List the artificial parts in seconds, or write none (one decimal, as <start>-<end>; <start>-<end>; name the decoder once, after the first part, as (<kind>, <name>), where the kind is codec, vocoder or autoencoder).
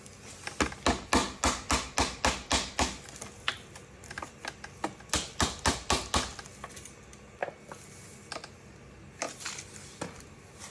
none